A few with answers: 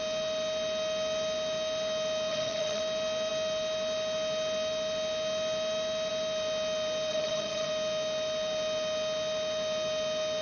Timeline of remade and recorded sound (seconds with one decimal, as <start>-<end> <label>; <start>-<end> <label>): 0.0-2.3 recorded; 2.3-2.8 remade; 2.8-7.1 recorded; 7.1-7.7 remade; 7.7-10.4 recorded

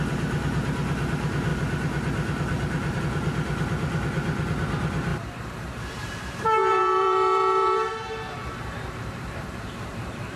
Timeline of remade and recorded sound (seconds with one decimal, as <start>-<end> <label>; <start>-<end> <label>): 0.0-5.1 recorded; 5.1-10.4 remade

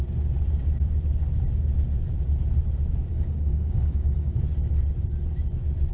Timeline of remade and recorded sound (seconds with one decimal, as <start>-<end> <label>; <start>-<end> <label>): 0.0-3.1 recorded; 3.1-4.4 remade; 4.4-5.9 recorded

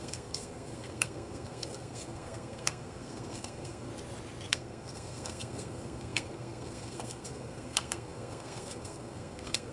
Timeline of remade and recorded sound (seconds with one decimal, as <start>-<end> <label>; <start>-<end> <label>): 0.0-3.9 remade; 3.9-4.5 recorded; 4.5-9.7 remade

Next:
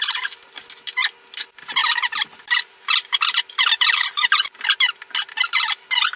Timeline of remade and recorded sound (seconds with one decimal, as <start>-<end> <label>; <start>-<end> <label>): 0.0-1.8 recorded; 1.8-4.9 remade; 4.9-6.2 recorded